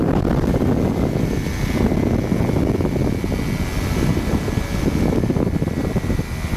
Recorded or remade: recorded